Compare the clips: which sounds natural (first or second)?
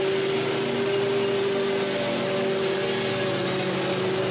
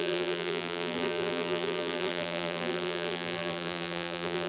first